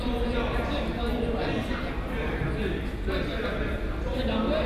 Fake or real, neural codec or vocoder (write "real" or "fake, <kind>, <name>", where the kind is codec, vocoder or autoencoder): real